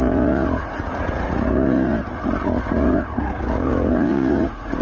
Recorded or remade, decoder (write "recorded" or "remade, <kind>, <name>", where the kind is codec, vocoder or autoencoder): remade, vocoder, Vocos